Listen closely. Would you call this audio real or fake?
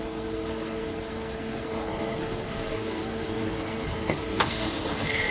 fake